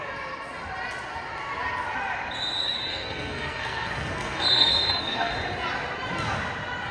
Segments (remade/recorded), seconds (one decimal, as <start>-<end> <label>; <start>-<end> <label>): 0.0-2.9 recorded; 2.9-5.3 remade; 5.3-6.9 recorded